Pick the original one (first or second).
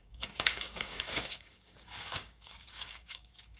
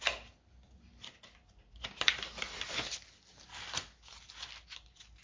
second